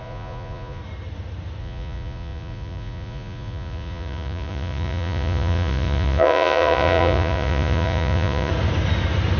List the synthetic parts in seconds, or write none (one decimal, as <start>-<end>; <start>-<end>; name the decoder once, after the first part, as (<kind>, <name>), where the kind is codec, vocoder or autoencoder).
0.0-0.8 (vocoder, Vocos); 1.6-8.5